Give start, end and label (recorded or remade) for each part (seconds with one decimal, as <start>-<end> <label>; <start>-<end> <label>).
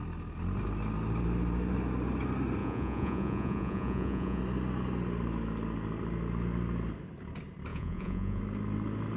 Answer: 0.0-2.6 recorded; 2.6-4.4 remade; 4.4-7.7 recorded; 7.7-8.4 remade; 8.4-9.2 recorded